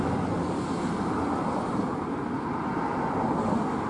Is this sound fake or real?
real